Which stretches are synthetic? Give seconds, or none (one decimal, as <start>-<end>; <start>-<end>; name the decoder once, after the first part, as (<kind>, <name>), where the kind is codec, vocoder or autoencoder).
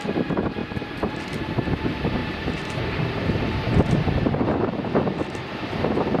0.6-1.1 (vocoder, BigVGAN v2); 2.2-4.9